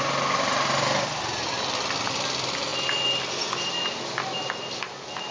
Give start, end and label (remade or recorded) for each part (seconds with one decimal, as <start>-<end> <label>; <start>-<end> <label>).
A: 0.0-5.3 recorded